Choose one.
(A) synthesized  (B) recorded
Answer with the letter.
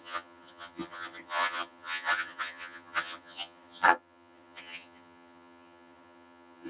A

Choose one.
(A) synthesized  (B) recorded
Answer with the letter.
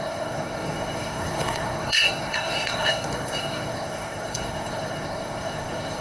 A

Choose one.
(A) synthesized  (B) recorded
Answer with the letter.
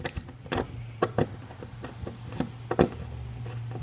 B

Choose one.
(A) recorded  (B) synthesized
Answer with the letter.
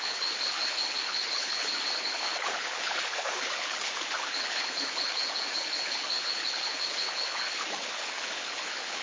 B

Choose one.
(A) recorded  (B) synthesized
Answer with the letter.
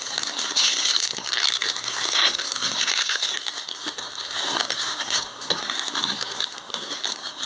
B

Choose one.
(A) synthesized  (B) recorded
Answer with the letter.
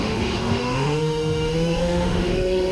A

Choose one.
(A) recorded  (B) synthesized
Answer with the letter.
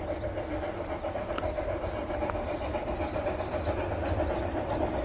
A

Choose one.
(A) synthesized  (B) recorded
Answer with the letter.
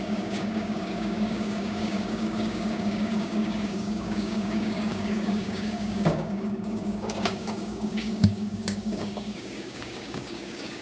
A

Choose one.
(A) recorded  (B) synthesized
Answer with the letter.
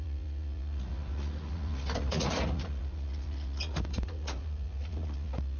B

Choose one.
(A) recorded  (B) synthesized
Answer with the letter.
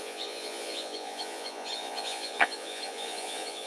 B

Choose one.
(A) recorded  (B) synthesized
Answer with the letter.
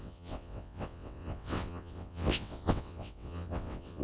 B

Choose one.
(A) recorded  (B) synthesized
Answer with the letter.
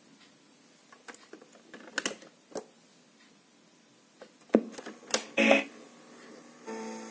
A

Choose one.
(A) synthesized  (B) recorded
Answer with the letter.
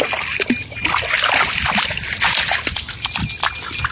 B